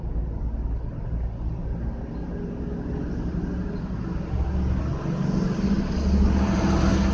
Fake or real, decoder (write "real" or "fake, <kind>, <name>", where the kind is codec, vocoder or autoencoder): real